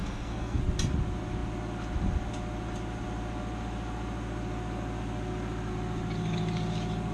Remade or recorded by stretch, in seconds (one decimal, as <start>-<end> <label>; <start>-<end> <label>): 0.0-0.6 remade; 0.6-7.1 recorded